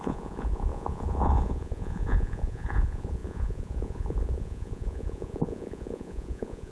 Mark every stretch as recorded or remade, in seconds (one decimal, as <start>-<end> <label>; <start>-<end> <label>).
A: 0.0-6.7 remade